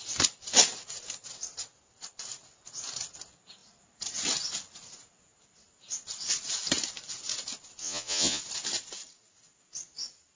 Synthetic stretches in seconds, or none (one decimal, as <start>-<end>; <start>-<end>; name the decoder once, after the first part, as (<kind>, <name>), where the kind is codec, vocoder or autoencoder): 7.8-8.4 (vocoder, Vocos)